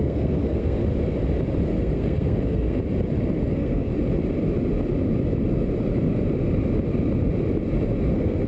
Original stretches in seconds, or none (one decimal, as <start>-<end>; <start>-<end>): 0.8-1.7; 2.8-3.5; 3.9-8.1